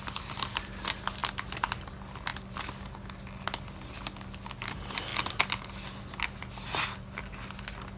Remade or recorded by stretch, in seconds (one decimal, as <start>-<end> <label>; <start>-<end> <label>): 0.0-8.0 recorded